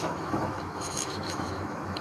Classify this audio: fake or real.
fake